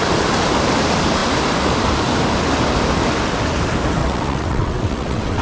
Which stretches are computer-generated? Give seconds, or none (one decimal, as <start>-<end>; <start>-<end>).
4.0-5.4